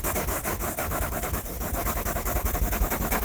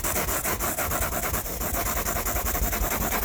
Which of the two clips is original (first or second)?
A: second